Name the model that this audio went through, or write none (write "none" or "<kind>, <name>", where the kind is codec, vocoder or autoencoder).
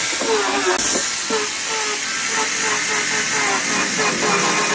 none